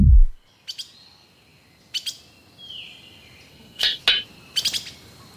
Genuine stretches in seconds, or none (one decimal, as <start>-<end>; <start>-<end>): 0.0-3.5; 4.0-5.4